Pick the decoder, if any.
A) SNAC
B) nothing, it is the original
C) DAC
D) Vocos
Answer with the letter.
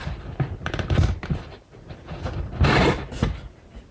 B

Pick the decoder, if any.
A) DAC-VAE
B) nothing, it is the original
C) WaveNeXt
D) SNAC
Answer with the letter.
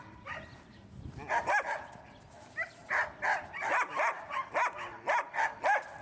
B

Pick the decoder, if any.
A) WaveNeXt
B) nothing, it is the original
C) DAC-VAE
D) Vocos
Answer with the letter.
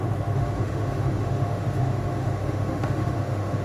C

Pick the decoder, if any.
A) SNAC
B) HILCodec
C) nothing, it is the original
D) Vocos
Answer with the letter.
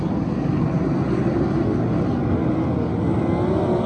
C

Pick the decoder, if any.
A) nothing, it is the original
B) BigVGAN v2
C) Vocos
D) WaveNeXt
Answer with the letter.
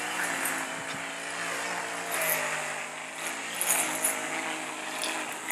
A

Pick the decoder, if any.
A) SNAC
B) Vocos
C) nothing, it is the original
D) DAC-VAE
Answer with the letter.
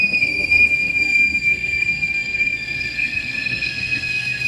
A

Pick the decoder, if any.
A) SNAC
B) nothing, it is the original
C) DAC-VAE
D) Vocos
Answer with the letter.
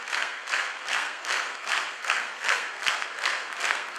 A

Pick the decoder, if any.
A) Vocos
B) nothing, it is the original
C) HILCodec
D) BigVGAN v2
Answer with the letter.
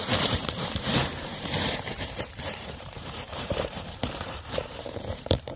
D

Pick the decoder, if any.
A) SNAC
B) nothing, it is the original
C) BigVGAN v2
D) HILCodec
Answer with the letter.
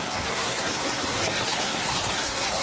A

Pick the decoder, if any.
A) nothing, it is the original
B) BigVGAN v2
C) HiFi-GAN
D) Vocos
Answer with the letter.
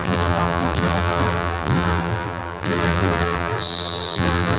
B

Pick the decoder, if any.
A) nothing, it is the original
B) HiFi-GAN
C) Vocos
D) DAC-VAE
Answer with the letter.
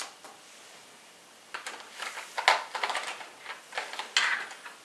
A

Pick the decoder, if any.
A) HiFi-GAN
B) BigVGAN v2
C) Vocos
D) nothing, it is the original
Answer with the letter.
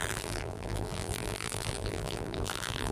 B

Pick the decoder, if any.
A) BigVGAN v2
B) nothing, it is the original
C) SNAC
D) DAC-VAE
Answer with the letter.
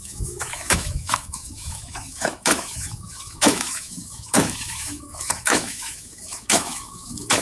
D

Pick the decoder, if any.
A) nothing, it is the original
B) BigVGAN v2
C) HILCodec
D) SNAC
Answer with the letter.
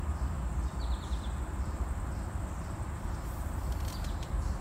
B